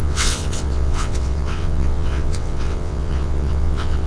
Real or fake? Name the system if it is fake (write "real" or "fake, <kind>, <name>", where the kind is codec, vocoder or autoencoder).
fake, vocoder, WaveNeXt